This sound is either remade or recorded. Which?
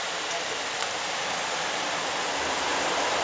recorded